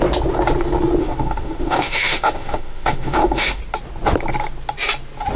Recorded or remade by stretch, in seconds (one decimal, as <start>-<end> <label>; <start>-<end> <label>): 0.0-1.0 recorded; 1.0-3.6 remade; 3.6-5.4 recorded